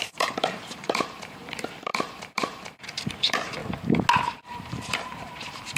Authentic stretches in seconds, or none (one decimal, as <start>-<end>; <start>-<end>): 3.6-4.2